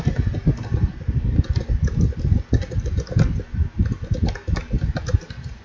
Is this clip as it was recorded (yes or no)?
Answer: yes